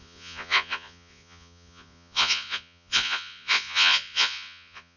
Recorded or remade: remade